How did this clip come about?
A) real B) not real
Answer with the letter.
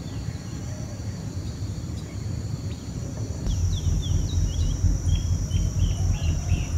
B